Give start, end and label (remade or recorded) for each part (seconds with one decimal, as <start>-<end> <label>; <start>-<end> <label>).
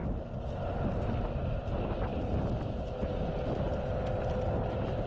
0.0-1.2 remade; 1.2-2.1 recorded; 2.1-2.9 remade; 2.9-5.1 recorded